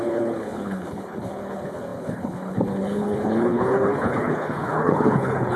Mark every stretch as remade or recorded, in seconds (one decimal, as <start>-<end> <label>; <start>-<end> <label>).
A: 0.0-5.6 remade